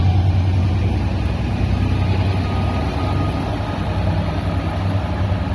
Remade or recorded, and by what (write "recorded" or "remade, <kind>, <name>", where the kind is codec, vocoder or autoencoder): recorded